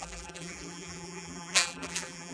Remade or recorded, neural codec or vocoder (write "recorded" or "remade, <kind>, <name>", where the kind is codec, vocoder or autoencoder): remade, vocoder, BigVGAN v2